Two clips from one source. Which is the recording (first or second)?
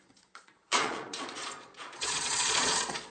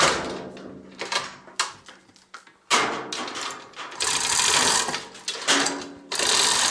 second